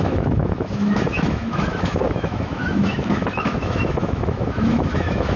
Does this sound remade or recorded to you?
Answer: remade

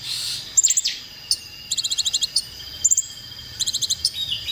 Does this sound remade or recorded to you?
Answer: remade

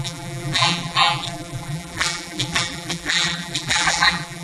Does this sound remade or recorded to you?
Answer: remade